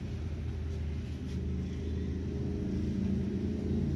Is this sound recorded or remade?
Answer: recorded